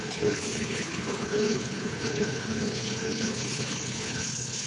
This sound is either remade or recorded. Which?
remade